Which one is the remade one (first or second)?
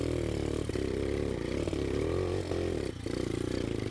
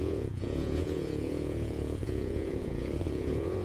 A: second